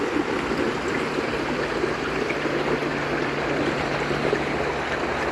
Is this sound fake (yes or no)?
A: no